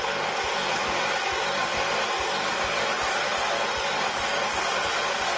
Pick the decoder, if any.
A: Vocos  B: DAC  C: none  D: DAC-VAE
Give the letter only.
C